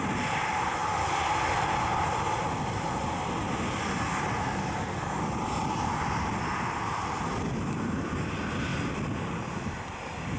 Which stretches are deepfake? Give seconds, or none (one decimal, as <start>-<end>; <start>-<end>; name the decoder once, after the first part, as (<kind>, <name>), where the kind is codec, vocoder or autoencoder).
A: none